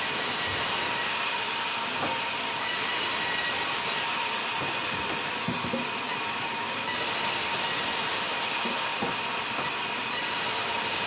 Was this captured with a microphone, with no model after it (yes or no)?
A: yes